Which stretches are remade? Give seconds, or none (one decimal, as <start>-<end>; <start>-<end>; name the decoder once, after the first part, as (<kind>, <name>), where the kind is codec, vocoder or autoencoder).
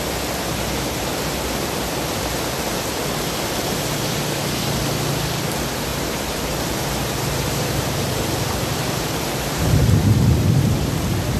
5.9-10.8 (vocoder, BigVGAN v2)